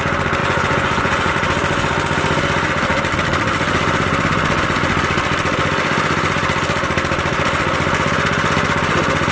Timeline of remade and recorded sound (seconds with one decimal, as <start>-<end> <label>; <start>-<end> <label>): 0.0-0.4 recorded; 0.4-1.3 remade; 1.3-9.3 recorded